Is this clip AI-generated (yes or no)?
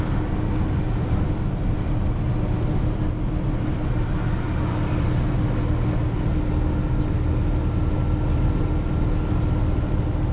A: no